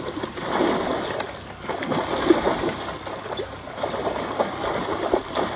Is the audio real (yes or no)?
yes